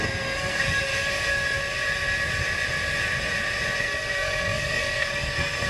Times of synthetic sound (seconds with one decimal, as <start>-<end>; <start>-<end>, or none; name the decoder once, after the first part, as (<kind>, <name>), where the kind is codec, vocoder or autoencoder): 0.0-0.9 (codec, SNAC); 3.8-5.7